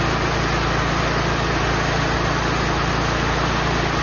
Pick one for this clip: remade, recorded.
recorded